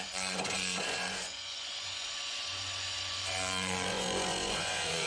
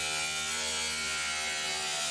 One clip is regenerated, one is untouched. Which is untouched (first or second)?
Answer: second